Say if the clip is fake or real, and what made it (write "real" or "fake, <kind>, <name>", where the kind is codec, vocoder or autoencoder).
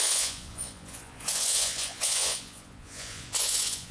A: fake, vocoder, Vocos